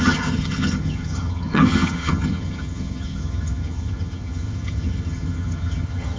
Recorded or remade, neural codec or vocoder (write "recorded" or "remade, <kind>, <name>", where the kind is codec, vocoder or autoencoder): remade, vocoder, HiFi-GAN